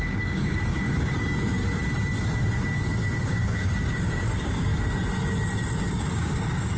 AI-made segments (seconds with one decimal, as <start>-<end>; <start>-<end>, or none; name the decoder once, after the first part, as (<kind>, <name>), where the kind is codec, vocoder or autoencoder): 0.0-1.6 (codec, DAC); 3.2-4.7; 5.7-6.8